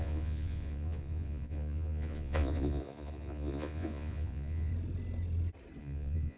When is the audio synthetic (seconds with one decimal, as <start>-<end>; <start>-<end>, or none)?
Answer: 0.0-4.7; 5.8-6.4